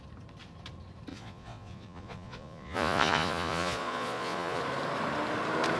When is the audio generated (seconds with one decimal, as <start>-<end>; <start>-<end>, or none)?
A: 1.1-4.6

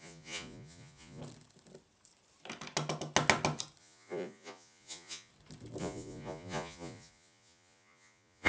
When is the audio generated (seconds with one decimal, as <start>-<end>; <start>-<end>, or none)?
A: 0.0-1.2; 3.8-5.3; 5.8-8.5

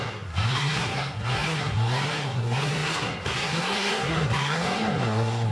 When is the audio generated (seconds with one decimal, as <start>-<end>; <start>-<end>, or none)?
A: 0.0-5.5

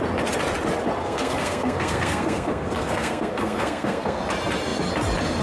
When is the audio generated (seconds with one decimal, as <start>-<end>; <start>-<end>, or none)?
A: 1.0-4.2

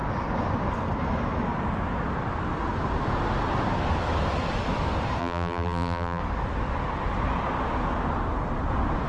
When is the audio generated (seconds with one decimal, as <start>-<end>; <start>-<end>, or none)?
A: 5.2-6.2

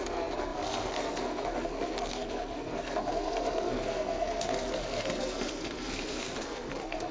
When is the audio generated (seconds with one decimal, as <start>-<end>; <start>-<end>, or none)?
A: 0.0-7.1